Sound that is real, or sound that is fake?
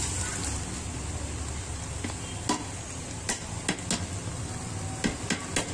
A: real